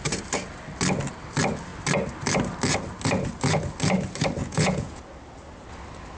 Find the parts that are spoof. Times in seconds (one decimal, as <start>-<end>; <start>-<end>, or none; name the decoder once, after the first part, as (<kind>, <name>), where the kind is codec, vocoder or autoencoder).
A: 4.4-5.0 (vocoder, Vocos)